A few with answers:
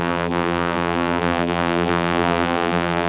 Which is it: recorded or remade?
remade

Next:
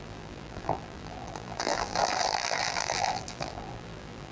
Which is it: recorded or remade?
remade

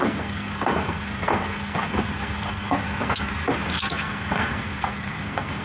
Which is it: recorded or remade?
remade